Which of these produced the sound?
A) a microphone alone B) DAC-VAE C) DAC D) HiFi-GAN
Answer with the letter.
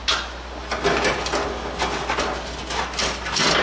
A